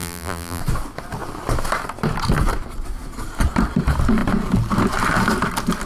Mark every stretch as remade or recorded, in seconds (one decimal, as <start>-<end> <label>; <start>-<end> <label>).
0.0-0.6 remade; 0.6-5.9 recorded